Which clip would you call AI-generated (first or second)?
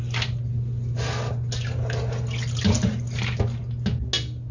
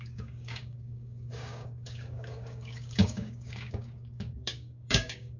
second